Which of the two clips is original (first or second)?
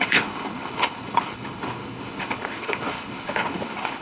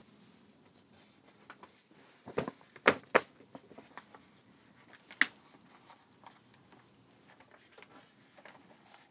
second